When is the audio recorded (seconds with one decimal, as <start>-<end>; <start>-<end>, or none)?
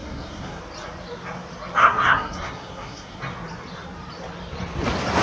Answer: 0.6-1.8; 3.2-5.2